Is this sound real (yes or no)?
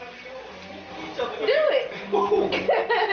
yes